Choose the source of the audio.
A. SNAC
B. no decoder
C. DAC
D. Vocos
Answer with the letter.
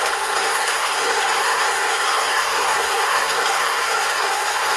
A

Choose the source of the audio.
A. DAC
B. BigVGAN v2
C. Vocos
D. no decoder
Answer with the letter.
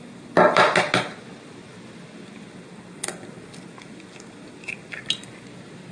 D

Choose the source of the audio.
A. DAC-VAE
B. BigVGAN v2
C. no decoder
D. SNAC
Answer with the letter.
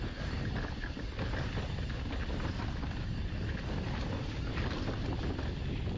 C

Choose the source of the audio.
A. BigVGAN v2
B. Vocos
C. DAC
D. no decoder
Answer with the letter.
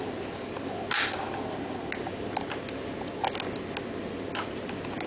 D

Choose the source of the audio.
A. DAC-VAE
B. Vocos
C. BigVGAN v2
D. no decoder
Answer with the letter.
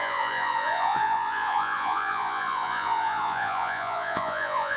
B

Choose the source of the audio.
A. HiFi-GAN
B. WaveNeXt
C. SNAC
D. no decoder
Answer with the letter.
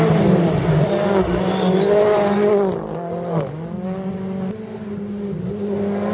D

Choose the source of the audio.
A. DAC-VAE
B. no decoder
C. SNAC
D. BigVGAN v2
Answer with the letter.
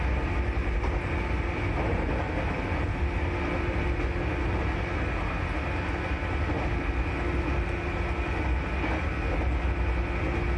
B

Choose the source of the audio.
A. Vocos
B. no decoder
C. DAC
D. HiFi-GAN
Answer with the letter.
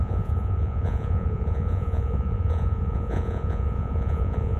A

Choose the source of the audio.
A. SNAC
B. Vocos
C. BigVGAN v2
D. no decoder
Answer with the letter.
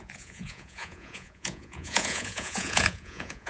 B